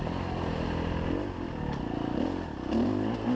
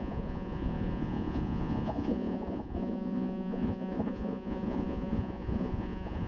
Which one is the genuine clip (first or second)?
first